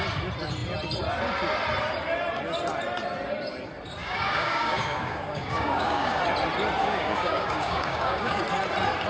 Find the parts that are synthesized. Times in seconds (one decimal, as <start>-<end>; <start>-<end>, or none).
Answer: 4.0-6.2; 6.8-8.4